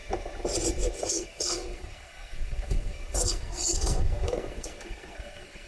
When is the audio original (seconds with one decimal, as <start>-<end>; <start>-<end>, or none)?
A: 0.0-1.1